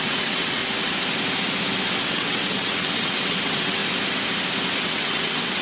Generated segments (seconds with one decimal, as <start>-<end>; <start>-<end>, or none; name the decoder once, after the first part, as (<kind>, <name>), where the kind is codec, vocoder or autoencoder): 0.0-0.6 (vocoder, WaveNeXt); 1.8-3.8; 4.8-5.6